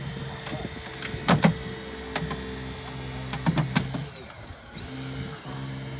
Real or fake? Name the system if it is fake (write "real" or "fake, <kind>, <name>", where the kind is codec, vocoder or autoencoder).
real